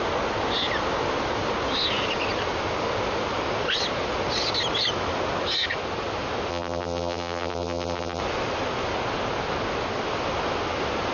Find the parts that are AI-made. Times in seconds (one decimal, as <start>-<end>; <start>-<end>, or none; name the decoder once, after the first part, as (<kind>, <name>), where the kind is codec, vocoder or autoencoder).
6.5-8.2 (vocoder, BigVGAN v2)